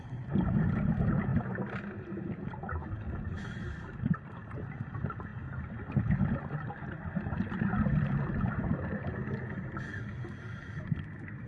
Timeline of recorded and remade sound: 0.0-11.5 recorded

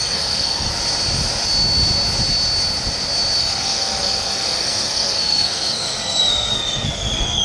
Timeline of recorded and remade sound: 0.0-0.7 remade; 0.7-3.4 recorded; 3.4-7.4 remade

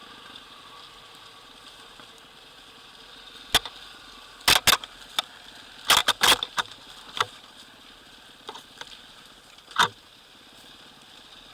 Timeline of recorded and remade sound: 0.0-11.5 recorded

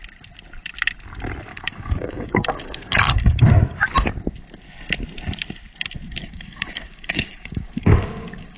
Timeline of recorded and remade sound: 0.0-1.5 recorded; 1.5-3.5 remade; 3.5-6.2 recorded; 6.2-8.6 remade

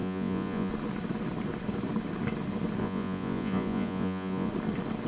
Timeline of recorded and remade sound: 0.0-0.7 remade; 0.7-2.8 recorded; 2.8-4.5 remade; 4.5-5.1 recorded